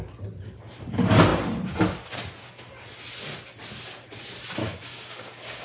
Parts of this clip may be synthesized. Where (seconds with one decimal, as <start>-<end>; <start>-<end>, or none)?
4.6-5.6